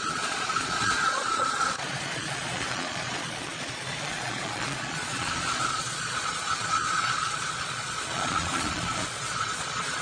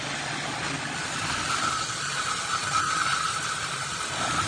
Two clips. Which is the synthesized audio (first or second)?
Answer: first